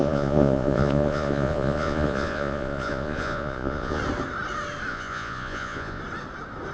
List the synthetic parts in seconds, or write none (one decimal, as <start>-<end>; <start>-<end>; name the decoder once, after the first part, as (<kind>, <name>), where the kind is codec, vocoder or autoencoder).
0.0-4.0 (vocoder, Vocos); 4.9-6.0